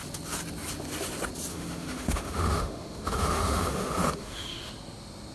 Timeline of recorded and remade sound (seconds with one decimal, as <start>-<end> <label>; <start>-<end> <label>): 0.0-1.5 recorded; 1.5-4.7 remade; 4.7-5.3 recorded